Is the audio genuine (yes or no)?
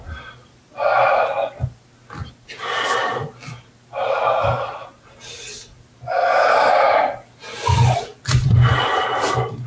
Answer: yes